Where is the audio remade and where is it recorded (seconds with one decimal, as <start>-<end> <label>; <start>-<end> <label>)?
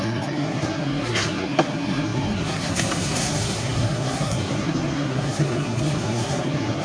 0.0-6.8 remade